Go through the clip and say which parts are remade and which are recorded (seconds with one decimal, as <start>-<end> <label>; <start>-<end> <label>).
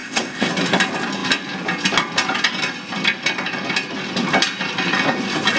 0.0-0.5 remade; 0.5-5.6 recorded